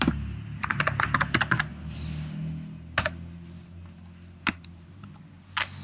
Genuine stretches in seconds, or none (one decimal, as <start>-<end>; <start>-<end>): 0.0-5.8